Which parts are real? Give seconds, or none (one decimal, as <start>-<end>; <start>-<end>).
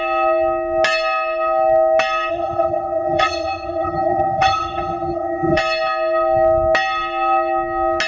0.0-2.3; 5.6-8.1